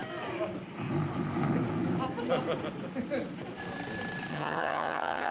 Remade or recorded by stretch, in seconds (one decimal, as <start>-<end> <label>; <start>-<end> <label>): 0.0-4.3 recorded; 4.3-5.3 remade